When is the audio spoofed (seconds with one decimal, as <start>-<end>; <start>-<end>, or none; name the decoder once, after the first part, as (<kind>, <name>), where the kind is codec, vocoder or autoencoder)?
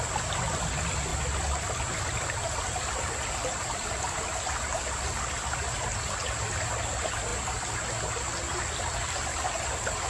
none